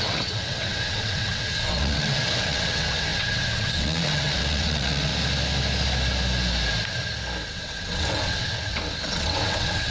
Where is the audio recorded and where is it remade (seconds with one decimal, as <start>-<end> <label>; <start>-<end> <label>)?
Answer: 0.0-5.1 remade; 5.1-7.5 recorded; 7.5-9.9 remade